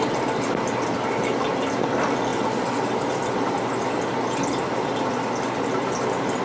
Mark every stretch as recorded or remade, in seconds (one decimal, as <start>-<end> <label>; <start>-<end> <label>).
0.0-6.4 recorded